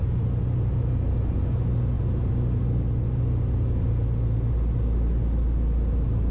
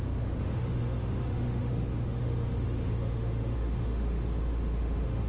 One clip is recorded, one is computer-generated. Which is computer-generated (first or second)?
second